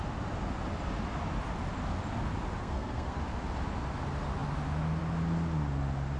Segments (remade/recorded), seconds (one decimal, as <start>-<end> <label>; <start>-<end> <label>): 0.0-2.6 recorded; 2.6-3.2 remade; 3.2-6.2 recorded